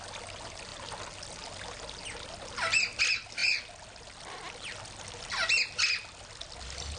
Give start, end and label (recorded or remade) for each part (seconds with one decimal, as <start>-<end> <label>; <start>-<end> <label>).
0.0-7.0 recorded